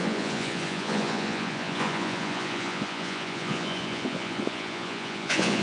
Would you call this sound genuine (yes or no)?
no